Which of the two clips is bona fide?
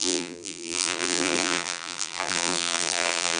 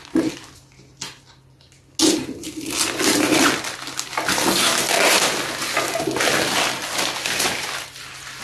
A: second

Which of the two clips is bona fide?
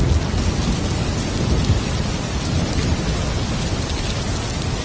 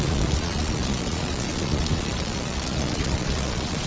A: first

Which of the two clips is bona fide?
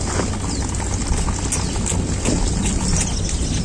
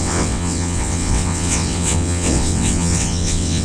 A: first